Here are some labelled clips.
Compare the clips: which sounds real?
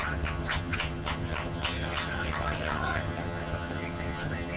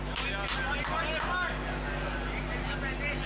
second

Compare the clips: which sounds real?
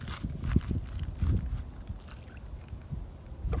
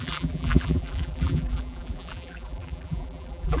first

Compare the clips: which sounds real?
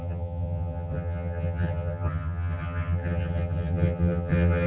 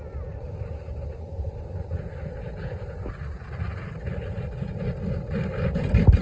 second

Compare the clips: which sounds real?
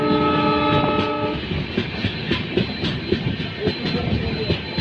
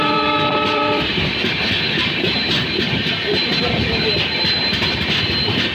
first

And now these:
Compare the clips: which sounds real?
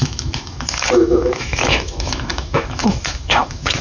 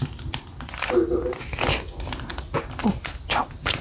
second